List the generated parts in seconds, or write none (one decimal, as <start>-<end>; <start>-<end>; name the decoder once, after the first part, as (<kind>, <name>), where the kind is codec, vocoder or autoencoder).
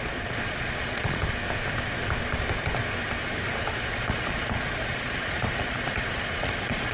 0.0-1.2 (vocoder, Vocos); 3.7-6.9